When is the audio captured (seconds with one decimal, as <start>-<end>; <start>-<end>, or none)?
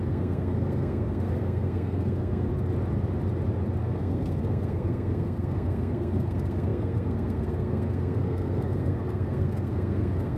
2.5-3.8